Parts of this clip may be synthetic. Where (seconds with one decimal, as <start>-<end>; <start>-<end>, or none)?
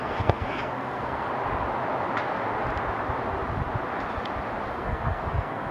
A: 0.0-1.3; 4.7-5.7